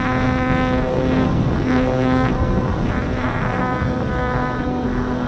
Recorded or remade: remade